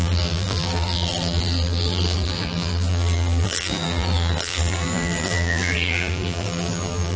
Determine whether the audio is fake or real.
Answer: fake